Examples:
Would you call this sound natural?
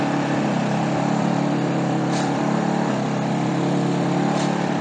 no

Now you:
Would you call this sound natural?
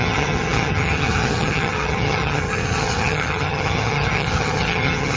no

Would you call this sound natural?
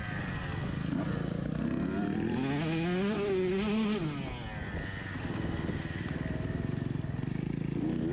yes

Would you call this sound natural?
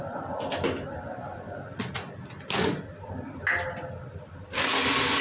yes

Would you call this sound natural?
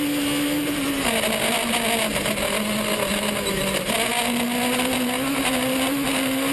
yes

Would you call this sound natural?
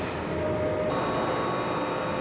yes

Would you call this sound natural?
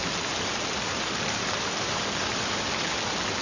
yes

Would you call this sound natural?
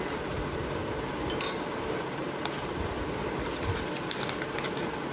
yes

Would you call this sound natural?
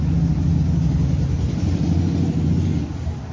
yes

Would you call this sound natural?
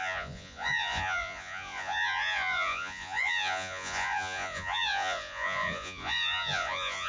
no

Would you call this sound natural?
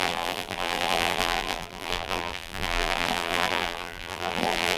no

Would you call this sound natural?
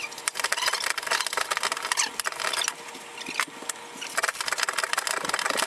yes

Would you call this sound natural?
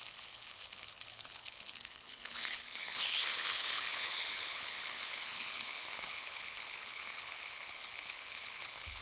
no